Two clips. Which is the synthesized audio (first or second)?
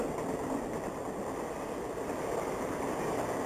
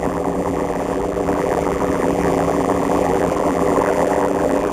second